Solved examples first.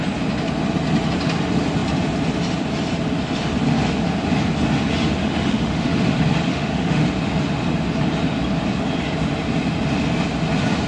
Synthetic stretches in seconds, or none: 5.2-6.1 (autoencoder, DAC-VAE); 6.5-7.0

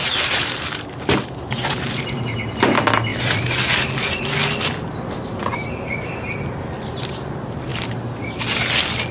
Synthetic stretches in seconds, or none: 0.0-2.5 (vocoder, BigVGAN v2); 3.1-3.6; 7.7-8.4

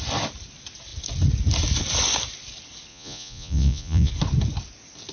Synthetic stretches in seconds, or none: 2.9-4.1 (vocoder, Vocos)

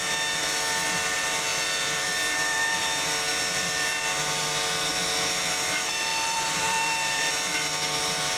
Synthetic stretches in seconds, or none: 1.5-2.8 (vocoder, BigVGAN v2); 6.1-7.3

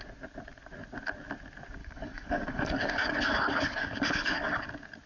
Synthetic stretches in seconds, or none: 1.8-4.4 (codec, DAC)

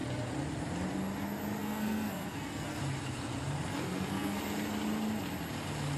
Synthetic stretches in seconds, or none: 1.6-2.8 (codec, SNAC); 3.7-4.4

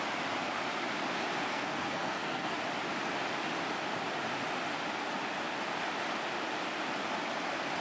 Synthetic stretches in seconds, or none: 1.5-2.5 (codec, SNAC)

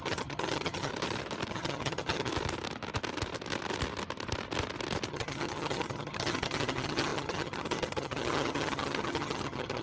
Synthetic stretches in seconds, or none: 0.0-0.9 (vocoder, HiFi-GAN); 1.5-2.3; 5.1-9.8